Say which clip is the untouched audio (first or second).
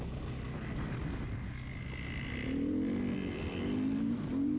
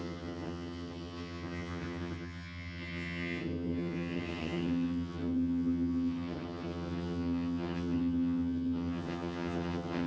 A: first